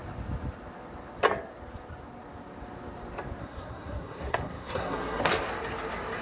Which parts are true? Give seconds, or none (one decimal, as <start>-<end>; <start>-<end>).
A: 0.0-3.4; 5.2-6.2